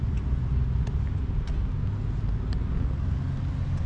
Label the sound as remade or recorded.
recorded